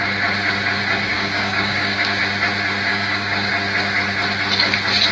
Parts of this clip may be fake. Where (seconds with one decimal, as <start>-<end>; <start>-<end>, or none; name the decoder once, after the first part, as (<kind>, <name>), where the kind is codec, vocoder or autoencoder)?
1.1-2.2 (codec, DAC); 2.9-3.5